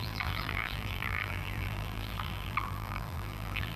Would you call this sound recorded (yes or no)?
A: no